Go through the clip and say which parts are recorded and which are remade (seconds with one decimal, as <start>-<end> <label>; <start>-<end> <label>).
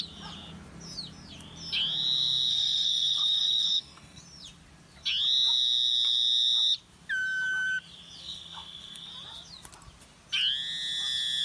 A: 0.0-2.5 recorded; 2.5-4.2 remade; 4.2-8.2 recorded; 8.2-9.1 remade; 9.1-11.4 recorded